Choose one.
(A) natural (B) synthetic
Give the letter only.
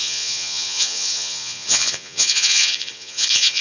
B